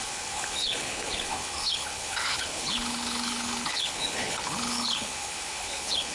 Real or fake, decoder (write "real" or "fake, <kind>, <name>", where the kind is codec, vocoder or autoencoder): fake, codec, HILCodec